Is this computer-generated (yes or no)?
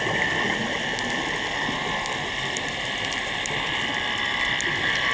no